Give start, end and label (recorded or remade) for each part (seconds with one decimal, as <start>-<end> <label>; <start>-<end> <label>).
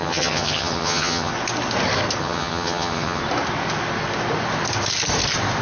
0.0-1.3 remade; 1.3-2.2 recorded; 2.2-3.2 remade; 3.2-5.6 recorded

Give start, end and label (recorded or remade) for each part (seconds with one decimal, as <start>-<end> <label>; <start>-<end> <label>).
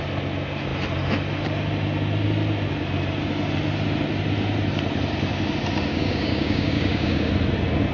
0.0-5.9 recorded; 5.9-7.3 remade; 7.3-7.9 recorded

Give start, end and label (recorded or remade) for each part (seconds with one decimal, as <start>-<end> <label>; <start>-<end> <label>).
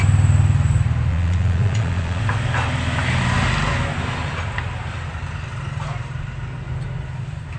0.0-1.1 recorded; 1.1-2.2 remade; 2.2-7.6 recorded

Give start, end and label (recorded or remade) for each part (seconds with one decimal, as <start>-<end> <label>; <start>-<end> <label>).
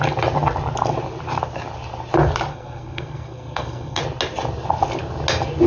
0.0-2.5 recorded; 2.5-4.0 remade; 4.0-5.7 recorded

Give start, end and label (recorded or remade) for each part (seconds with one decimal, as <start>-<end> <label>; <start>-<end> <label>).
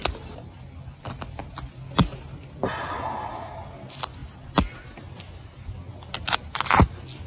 0.0-7.3 recorded